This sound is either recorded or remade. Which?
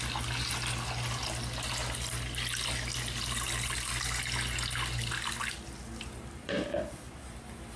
recorded